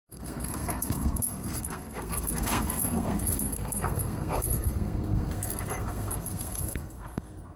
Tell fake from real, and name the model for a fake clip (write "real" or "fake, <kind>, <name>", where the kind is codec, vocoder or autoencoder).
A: fake, codec, SNAC